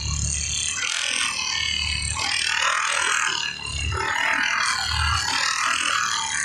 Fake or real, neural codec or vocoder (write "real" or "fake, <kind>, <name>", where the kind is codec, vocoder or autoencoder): real